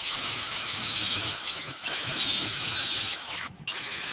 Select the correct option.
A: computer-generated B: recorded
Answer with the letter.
A